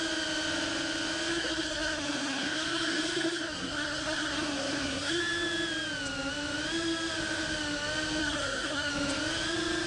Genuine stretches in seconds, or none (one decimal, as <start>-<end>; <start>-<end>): 0.0-1.3; 5.2-8.2; 8.9-9.9